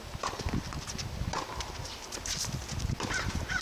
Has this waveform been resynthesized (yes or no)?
no